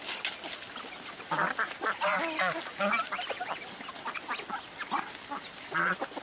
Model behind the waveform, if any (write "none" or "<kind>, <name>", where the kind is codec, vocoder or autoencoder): none